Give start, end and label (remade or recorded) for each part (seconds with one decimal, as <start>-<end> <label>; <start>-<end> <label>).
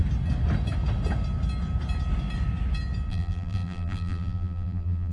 0.0-3.1 recorded; 3.1-5.1 remade